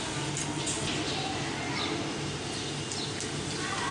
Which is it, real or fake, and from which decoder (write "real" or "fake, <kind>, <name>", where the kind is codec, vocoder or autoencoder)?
real